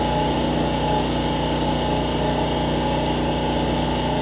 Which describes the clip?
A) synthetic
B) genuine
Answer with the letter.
B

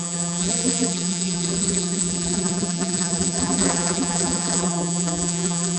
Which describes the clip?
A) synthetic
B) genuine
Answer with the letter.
A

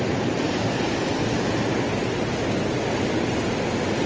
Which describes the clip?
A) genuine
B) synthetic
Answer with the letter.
A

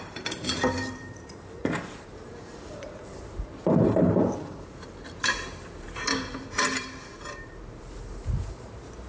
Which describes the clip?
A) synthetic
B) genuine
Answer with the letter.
A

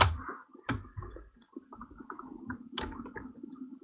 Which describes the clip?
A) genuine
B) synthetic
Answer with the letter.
B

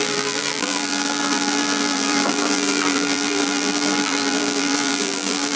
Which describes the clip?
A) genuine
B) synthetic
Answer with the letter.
B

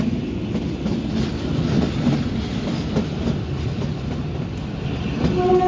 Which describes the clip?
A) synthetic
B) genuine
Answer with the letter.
B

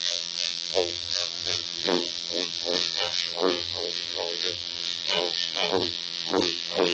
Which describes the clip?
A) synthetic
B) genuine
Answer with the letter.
A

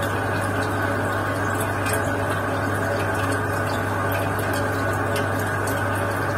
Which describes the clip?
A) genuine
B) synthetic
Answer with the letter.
A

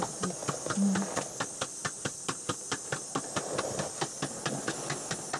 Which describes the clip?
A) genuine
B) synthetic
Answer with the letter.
A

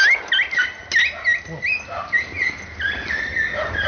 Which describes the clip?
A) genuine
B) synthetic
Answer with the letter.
A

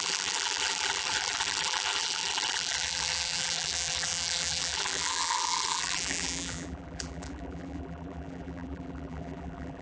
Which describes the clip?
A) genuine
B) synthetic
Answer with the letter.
B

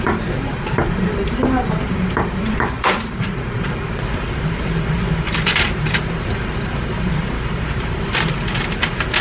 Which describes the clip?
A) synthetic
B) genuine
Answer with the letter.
A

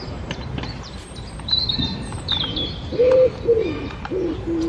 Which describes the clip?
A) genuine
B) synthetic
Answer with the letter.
B